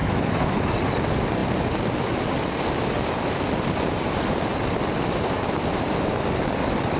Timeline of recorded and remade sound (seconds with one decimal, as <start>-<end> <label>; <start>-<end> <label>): 0.0-0.7 remade; 0.7-7.0 recorded